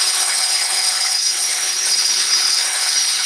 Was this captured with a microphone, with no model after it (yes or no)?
no